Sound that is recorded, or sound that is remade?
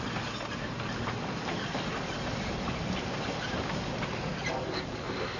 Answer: recorded